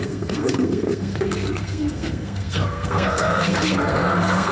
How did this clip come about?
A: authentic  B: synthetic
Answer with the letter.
B